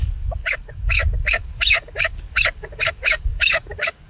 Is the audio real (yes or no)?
no